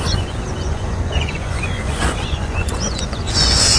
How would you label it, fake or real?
fake